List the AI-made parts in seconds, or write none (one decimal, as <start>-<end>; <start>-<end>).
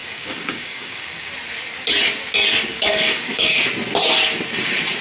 0.0-1.3; 2.7-3.7